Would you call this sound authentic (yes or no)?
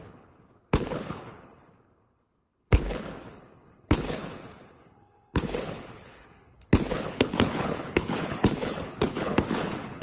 no